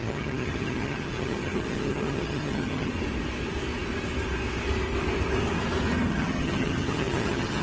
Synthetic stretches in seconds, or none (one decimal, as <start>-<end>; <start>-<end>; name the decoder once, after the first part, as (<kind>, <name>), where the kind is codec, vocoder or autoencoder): 0.0-2.9 (vocoder, HiFi-GAN); 6.1-7.6